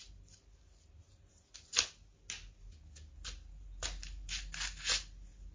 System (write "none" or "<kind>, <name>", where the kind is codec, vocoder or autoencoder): none